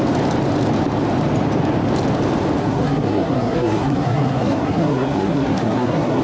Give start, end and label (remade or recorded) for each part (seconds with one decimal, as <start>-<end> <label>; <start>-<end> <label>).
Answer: 0.0-2.6 recorded; 2.6-6.2 remade